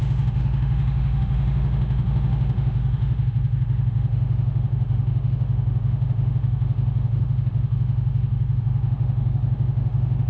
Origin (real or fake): fake